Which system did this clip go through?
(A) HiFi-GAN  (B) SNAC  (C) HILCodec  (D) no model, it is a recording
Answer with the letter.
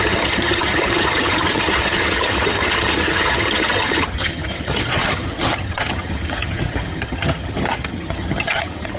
A